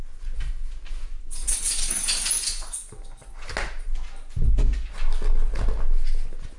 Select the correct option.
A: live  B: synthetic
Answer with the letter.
A